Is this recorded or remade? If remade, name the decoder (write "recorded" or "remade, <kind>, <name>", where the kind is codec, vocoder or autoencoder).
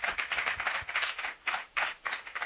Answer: remade, autoencoder, DAC-VAE